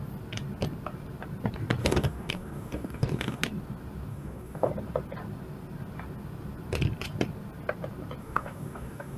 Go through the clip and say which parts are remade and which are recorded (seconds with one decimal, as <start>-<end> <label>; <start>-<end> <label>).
0.0-1.8 recorded; 1.8-3.4 remade; 3.4-4.1 recorded; 4.1-4.7 remade; 4.7-8.2 recorded; 8.2-9.2 remade